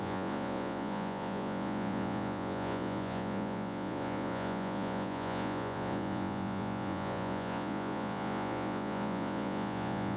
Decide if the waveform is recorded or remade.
remade